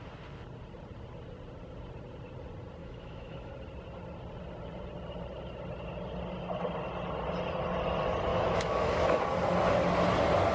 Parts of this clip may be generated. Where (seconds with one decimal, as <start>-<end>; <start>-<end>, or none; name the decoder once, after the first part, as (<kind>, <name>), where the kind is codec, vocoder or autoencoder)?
2.8-3.5 (autoencoder, DAC-VAE); 8.3-9.2